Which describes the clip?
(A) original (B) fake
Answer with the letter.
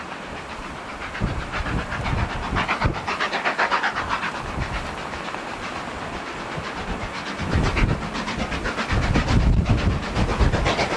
A